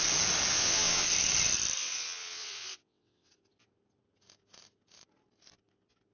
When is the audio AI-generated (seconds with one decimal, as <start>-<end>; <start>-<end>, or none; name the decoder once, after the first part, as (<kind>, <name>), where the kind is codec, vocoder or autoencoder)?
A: 0.5-1.1 (vocoder, WaveNeXt); 1.8-3.3